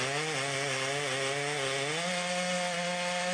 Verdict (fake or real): real